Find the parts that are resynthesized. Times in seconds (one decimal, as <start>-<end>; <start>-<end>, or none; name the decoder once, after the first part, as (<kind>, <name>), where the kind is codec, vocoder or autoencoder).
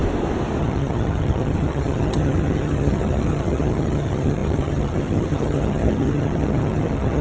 0.6-7.2 (vocoder, HiFi-GAN)